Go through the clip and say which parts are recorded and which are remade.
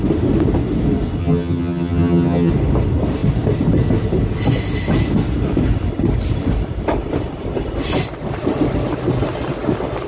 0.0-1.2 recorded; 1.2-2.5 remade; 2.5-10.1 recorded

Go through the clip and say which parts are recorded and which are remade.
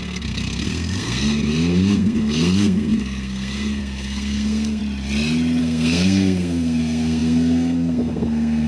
0.0-4.8 remade; 4.8-5.6 recorded; 5.6-8.7 remade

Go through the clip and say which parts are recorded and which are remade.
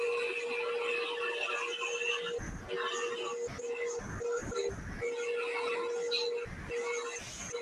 0.0-7.6 recorded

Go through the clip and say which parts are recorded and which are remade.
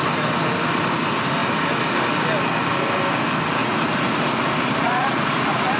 0.0-3.6 recorded; 3.6-5.8 remade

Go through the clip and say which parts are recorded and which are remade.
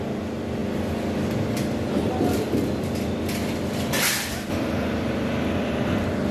0.0-6.3 recorded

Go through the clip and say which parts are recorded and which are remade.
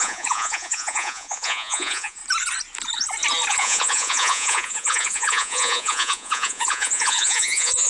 0.0-2.2 remade; 2.2-3.5 recorded; 3.5-7.9 remade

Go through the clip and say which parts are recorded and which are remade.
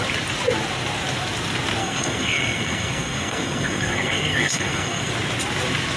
0.0-1.8 recorded; 1.8-5.1 remade; 5.1-6.0 recorded